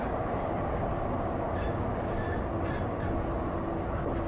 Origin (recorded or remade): recorded